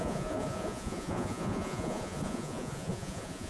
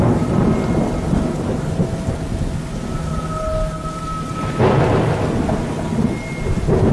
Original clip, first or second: second